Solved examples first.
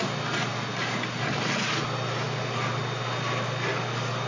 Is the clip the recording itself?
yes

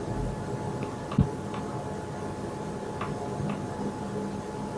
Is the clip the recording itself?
yes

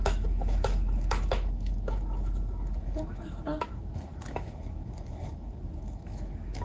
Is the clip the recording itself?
no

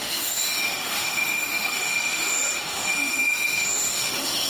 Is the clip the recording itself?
no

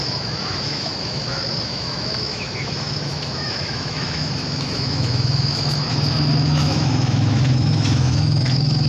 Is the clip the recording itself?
no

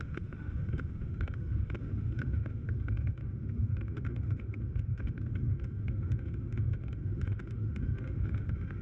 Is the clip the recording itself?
no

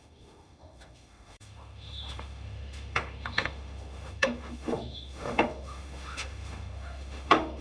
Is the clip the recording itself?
no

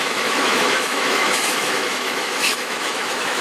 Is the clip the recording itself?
no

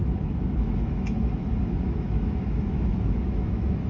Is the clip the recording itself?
no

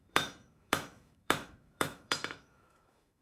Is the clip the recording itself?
no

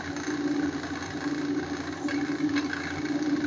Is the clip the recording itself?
yes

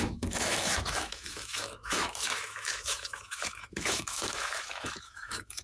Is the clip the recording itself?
no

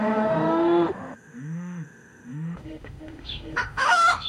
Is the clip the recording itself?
no